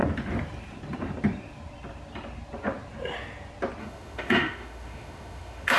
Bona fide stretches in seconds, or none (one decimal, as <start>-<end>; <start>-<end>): 0.0-3.8